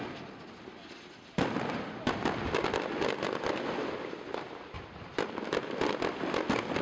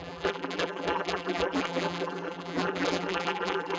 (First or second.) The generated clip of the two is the second